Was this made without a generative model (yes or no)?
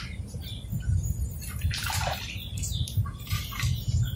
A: yes